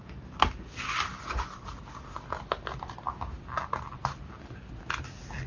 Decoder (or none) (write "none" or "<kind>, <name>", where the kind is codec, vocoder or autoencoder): none